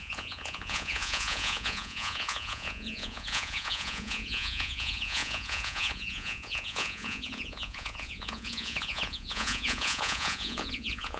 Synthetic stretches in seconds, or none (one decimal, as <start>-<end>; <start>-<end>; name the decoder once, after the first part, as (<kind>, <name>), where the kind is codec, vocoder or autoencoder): 0.0-11.2 (vocoder, Vocos)